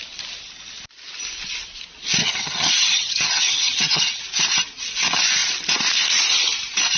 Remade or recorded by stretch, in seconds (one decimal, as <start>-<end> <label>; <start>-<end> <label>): 0.0-2.2 recorded; 2.2-4.2 remade; 4.2-7.0 recorded